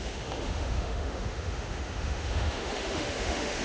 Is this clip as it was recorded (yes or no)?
no